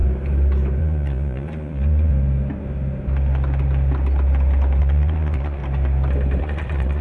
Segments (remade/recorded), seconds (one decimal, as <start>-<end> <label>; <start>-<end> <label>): 0.0-0.8 recorded; 0.8-2.1 remade; 2.1-4.8 recorded; 4.8-5.6 remade; 5.6-6.4 recorded; 6.4-7.0 remade